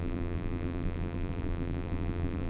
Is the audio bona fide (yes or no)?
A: no